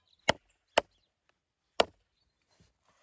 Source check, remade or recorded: recorded